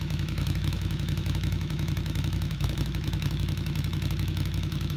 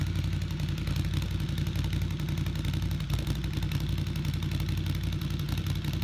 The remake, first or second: first